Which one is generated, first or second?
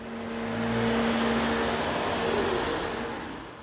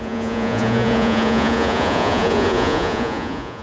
second